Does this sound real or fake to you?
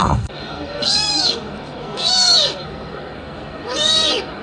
fake